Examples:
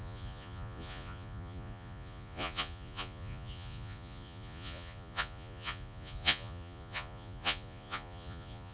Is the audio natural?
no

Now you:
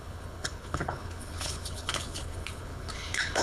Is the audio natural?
no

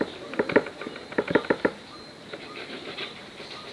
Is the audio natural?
yes